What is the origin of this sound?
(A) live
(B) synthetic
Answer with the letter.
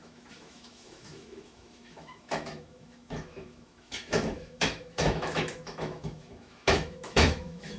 B